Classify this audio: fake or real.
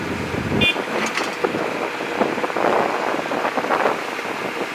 real